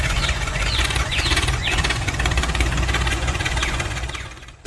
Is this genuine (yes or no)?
no